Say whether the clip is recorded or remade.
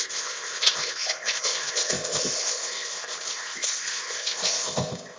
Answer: remade